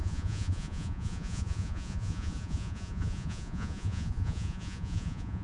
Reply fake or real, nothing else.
fake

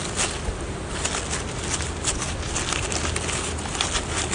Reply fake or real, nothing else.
real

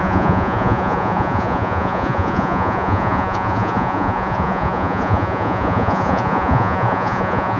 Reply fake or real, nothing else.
fake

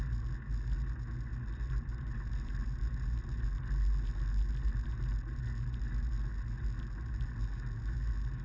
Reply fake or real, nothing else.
real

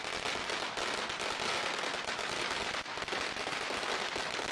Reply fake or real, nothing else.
real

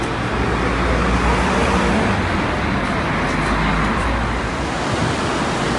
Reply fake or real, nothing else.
real